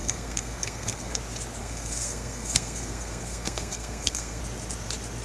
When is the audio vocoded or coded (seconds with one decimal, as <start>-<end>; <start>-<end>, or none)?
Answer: 0.0-1.2; 1.6-4.4